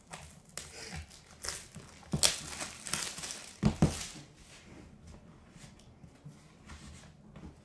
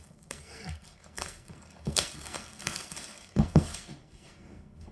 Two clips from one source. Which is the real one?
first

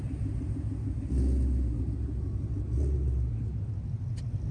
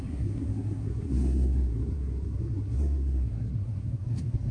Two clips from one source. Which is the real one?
first